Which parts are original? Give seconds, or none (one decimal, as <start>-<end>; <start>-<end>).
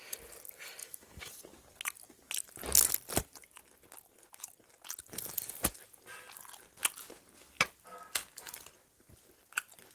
0.0-0.8; 1.3-9.9